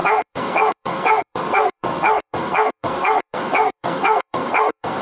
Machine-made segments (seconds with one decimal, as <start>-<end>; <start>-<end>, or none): 0.0-5.0